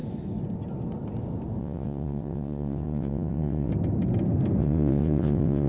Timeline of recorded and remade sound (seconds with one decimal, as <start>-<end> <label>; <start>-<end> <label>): 0.0-1.6 recorded; 1.6-3.7 remade; 3.7-4.6 recorded; 4.6-5.7 remade